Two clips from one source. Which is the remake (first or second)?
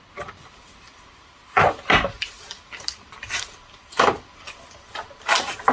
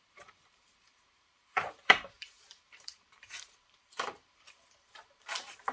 second